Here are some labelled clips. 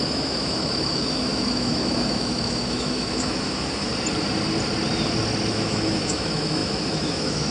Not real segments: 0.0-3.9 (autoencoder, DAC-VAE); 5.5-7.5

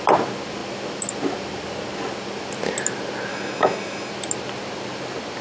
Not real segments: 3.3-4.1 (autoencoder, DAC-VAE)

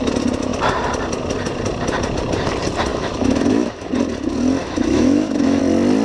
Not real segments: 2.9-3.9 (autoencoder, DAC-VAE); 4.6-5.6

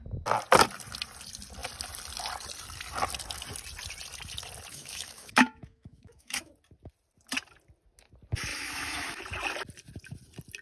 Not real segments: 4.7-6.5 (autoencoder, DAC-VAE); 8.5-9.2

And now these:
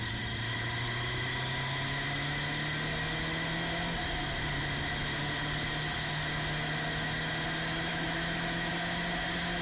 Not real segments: 7.9-8.7 (autoencoder, DAC-VAE)

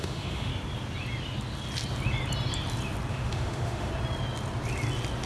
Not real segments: 0.0-0.5 (autoencoder, DAC-VAE); 3.1-3.9

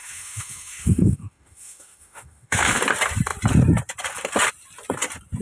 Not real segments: 0.0-2.8 (autoencoder, DAC-VAE)